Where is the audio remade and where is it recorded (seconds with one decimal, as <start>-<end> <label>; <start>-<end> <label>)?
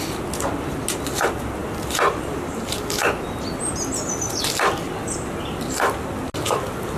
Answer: 0.0-7.0 recorded